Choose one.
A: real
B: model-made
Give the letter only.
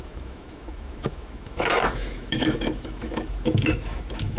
B